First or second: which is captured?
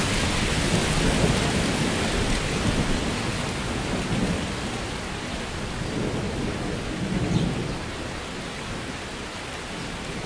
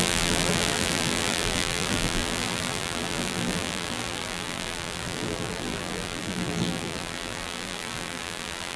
first